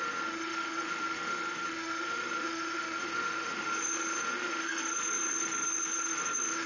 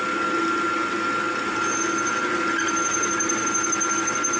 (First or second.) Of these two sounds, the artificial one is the first